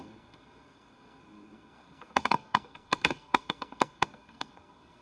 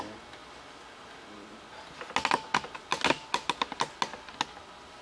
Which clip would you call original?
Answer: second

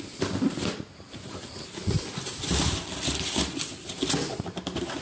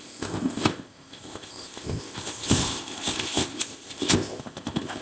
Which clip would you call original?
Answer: first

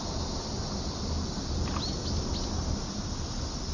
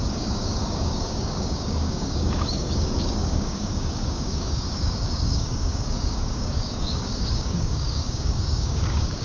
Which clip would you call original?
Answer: first